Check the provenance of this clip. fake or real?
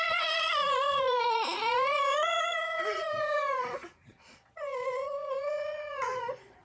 fake